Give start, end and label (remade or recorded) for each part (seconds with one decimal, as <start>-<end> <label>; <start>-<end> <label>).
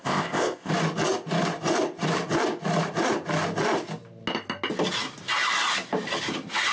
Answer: 0.0-0.7 remade; 0.7-6.7 recorded